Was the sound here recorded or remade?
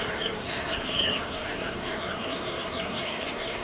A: remade